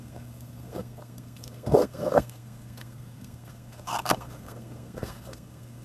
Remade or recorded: remade